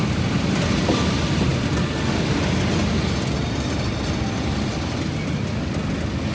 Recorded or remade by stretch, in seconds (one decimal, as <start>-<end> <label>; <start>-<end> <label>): 0.0-6.3 recorded